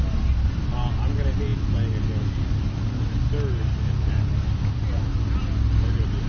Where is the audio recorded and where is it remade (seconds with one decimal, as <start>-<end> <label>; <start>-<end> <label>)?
0.0-6.3 recorded

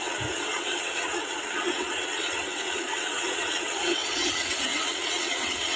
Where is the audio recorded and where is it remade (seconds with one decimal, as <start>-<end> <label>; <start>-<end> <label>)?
0.0-5.8 remade

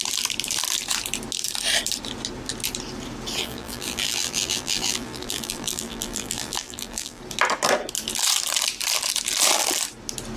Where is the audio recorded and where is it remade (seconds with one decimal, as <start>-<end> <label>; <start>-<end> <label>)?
0.0-3.4 recorded; 3.4-7.2 remade; 7.2-10.4 recorded

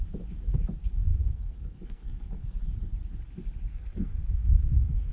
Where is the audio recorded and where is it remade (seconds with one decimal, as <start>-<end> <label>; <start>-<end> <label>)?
0.0-1.1 recorded; 1.1-2.6 remade; 2.6-3.7 recorded; 3.7-5.1 remade

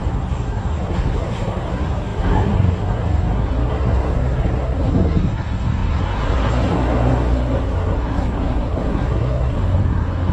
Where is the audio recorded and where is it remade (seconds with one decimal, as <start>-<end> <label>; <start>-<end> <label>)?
0.0-10.3 remade

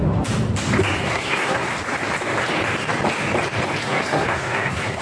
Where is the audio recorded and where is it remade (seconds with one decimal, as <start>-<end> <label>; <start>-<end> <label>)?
0.0-1.0 recorded; 1.0-1.7 remade; 1.7-3.8 recorded; 3.8-5.0 remade

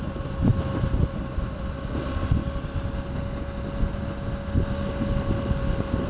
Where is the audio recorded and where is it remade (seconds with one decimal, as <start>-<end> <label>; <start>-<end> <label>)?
0.0-6.1 recorded